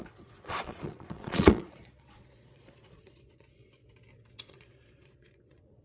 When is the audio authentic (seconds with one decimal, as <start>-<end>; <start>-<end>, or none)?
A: 3.8-4.4